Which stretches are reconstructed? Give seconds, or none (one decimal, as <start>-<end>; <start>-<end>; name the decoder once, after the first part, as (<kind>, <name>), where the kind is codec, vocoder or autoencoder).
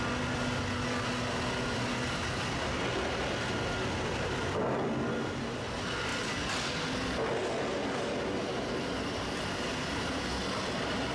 none